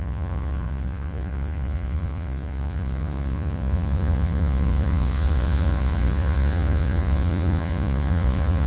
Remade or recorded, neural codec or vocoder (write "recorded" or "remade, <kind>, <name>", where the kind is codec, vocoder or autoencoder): remade, vocoder, Vocos